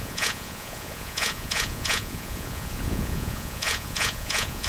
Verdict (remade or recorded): remade